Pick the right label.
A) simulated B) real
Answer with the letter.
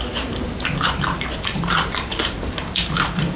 A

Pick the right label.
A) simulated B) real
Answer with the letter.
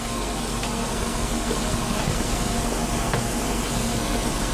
A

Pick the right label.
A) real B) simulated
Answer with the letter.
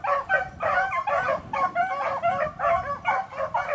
A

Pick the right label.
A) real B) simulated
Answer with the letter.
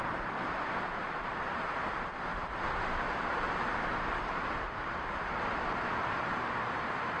B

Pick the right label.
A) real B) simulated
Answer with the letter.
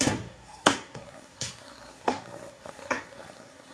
B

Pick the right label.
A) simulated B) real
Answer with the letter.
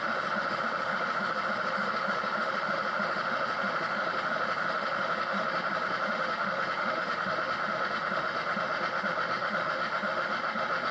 A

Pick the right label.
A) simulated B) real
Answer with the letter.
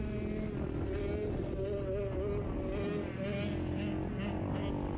B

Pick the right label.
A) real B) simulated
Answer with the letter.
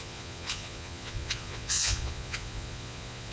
B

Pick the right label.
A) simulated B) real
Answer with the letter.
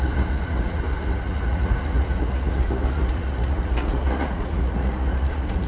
A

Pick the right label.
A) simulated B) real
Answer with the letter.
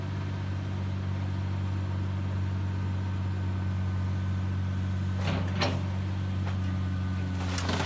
B